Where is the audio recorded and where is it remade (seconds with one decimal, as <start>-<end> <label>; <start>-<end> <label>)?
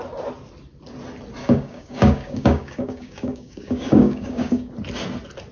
0.0-1.4 recorded; 1.4-4.7 remade; 4.7-5.5 recorded